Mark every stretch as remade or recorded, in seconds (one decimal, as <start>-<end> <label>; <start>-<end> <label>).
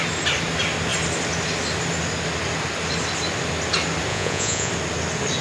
0.0-4.1 recorded; 4.1-4.7 remade; 4.7-5.4 recorded